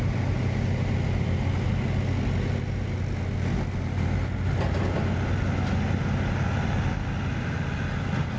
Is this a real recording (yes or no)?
yes